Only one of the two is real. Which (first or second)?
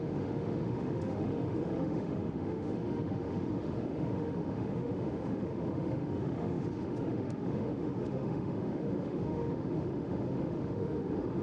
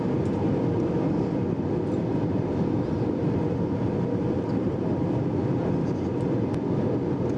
second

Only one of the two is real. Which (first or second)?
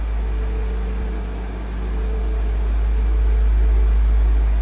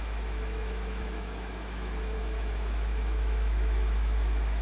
first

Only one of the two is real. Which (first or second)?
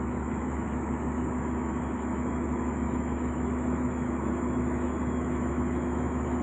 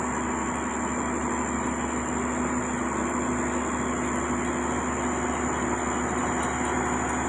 second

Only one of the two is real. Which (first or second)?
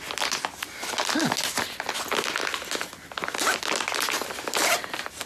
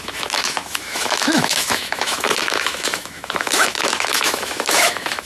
first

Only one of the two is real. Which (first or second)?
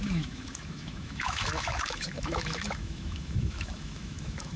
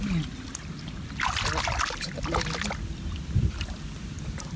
second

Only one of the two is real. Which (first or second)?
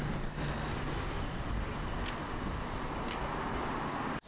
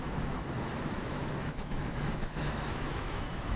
first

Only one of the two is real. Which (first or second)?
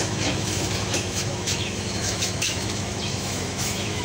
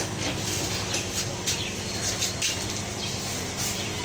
second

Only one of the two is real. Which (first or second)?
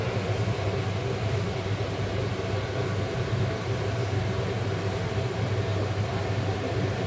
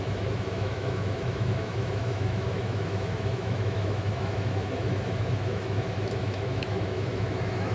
first